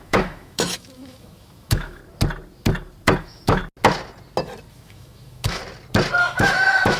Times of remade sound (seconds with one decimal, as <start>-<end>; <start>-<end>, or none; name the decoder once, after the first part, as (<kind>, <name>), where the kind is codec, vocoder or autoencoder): 0.0-2.0 (autoencoder, DAC-VAE); 3.2-3.6; 4.7-5.6; 6.2-7.0